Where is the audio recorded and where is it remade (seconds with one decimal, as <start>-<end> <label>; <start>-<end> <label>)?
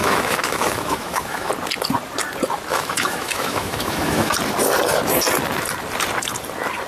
0.0-1.5 remade; 1.5-2.7 recorded; 2.7-4.3 remade; 4.3-6.9 recorded